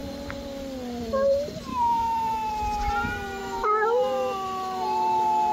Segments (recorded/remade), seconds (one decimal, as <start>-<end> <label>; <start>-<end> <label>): 0.0-1.7 recorded; 1.7-2.5 remade; 2.5-3.4 recorded; 3.4-4.0 remade; 4.0-5.5 recorded